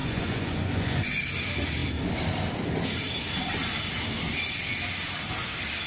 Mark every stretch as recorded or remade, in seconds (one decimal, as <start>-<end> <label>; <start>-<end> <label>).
0.0-1.2 remade; 1.2-5.9 recorded

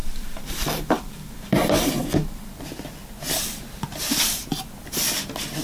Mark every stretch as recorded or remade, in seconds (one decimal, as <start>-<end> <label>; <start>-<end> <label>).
0.0-2.6 remade; 2.6-5.6 recorded

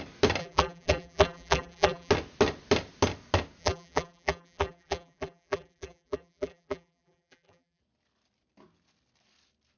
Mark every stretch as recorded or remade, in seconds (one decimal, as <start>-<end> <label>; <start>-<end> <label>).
0.0-0.4 recorded; 0.4-2.1 remade; 2.1-3.6 recorded; 3.6-7.8 remade; 7.8-9.8 recorded